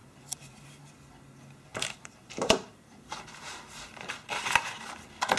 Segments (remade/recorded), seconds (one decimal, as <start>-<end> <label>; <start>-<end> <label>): 0.0-0.9 remade; 0.9-1.7 recorded; 1.7-4.9 remade; 4.9-5.4 recorded